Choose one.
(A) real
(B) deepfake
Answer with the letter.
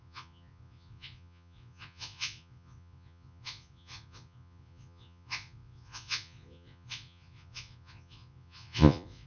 B